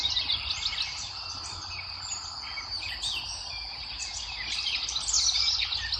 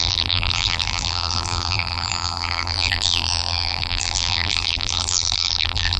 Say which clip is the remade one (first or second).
second